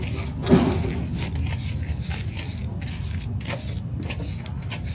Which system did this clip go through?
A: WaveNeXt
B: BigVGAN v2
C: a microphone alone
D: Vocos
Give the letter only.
C